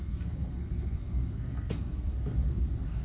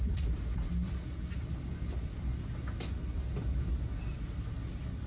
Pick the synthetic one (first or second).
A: first